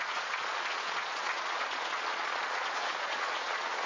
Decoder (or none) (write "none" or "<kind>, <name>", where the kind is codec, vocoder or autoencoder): vocoder, Vocos